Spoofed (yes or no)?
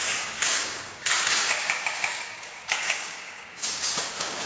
yes